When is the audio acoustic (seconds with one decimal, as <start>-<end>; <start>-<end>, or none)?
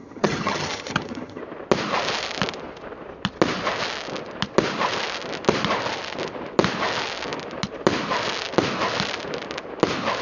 1.4-10.2